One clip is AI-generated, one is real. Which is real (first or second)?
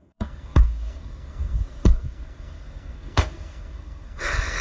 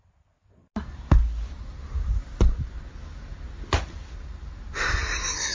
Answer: second